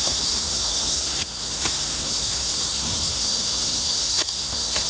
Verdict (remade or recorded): remade